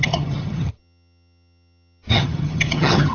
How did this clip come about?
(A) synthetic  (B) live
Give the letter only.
A